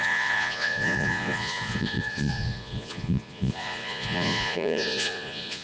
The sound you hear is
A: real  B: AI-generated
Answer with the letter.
B